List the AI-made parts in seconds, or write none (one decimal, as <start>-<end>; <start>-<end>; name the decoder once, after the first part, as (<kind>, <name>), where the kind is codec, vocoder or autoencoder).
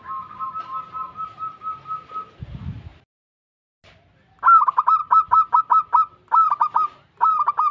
none